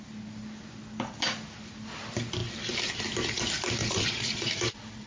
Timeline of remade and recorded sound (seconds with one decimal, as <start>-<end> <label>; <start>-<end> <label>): 0.0-3.8 recorded; 3.8-4.5 remade; 4.5-5.1 recorded